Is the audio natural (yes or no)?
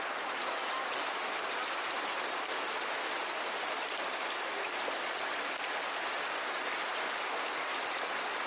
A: yes